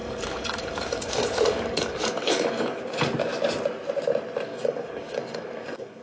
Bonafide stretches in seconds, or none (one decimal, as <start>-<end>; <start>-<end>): 2.8-4.5